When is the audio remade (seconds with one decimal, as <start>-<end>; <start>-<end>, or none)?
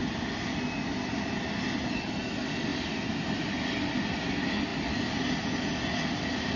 none